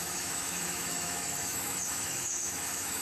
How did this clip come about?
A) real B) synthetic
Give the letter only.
B